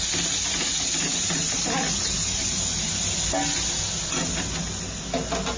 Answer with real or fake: real